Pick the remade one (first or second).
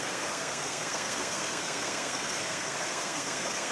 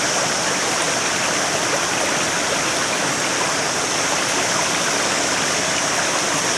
first